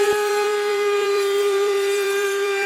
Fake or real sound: fake